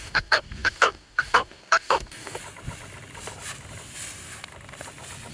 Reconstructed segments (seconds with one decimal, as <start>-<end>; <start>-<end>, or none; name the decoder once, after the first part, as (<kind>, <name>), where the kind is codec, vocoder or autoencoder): 0.0-2.4 (codec, DAC)